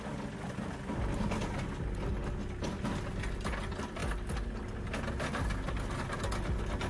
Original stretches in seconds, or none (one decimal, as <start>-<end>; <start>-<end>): 0.0-6.9